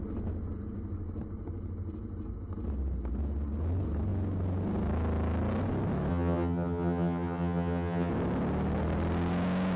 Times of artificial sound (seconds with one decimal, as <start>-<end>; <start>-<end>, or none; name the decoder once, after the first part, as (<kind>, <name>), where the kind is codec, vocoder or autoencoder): 6.1-8.1 (vocoder, HiFi-GAN)